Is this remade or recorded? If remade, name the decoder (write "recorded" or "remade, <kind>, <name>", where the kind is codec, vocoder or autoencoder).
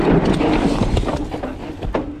recorded